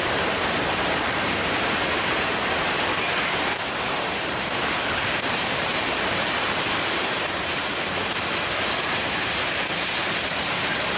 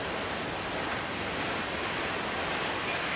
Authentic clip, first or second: second